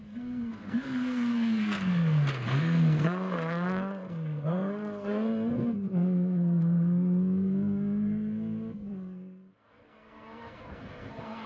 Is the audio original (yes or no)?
no